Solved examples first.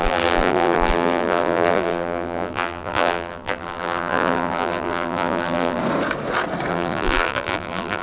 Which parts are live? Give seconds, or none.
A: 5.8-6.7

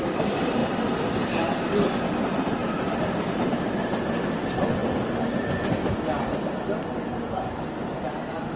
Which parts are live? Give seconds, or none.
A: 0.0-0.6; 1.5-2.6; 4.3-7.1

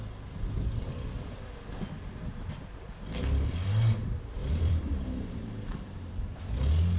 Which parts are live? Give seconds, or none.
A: 0.0-2.2; 2.9-4.4; 6.4-7.0

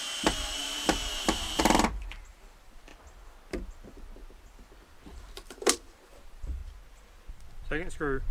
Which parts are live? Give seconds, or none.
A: 2.9-5.6; 6.6-8.3